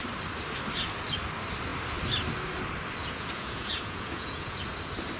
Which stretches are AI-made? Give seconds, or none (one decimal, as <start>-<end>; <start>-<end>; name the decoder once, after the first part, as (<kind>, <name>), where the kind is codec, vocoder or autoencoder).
3.0-4.6 (vocoder, Vocos)